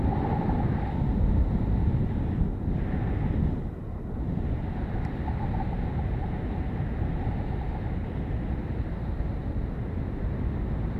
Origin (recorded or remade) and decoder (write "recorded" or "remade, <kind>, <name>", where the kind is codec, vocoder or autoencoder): recorded